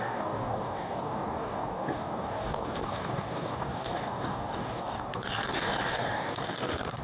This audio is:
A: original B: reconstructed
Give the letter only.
B